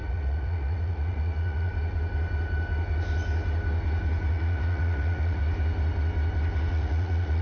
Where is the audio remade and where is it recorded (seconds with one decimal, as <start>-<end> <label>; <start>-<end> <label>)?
0.0-1.7 remade; 1.7-4.3 recorded; 4.3-5.4 remade; 5.4-6.7 recorded; 6.7-7.4 remade

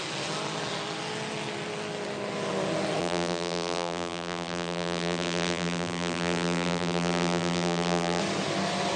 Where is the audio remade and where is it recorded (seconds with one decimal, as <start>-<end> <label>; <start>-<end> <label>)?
0.0-3.0 recorded; 3.0-8.2 remade; 8.2-9.0 recorded

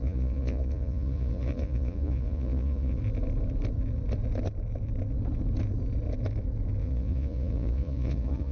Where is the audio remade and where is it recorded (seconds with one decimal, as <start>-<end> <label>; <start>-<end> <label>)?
0.0-3.0 remade; 3.0-6.8 recorded; 6.8-8.5 remade

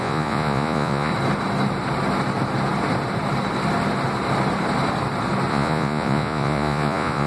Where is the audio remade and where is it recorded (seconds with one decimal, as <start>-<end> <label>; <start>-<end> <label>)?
0.0-1.1 remade; 1.1-5.5 recorded; 5.5-7.3 remade

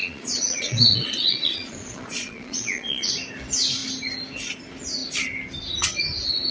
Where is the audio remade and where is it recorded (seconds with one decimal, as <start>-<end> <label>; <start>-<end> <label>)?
0.0-3.1 remade; 3.1-6.5 recorded

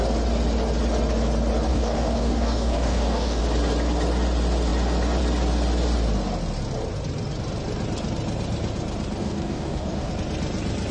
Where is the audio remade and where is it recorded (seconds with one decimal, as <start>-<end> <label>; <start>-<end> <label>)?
0.0-1.7 recorded; 1.7-3.4 remade; 3.4-9.2 recorded; 9.2-10.1 remade; 10.1-10.9 recorded

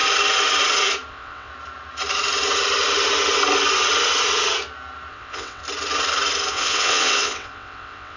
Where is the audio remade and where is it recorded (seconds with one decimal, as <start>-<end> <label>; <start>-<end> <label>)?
0.0-1.1 recorded; 1.1-1.5 remade; 1.5-5.1 recorded; 5.1-5.6 remade; 5.6-6.5 recorded; 6.5-8.2 remade